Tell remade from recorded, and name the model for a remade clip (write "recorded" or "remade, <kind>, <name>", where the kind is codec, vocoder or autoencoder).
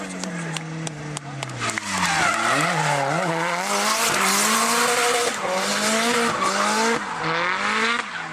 recorded